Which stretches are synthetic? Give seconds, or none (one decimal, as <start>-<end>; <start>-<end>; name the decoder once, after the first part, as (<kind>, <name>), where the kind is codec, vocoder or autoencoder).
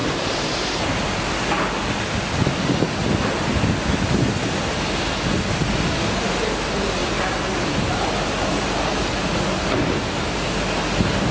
0.0-1.2 (vocoder, BigVGAN v2); 7.0-8.5